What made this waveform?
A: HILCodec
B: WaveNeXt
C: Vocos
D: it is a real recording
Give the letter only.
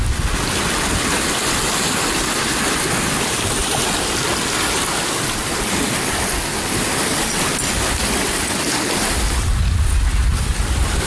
D